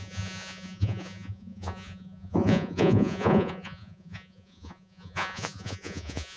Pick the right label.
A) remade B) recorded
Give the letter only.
A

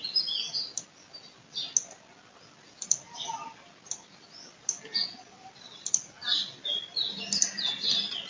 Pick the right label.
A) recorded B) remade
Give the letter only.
A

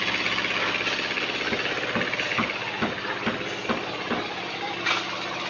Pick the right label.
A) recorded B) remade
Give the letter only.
A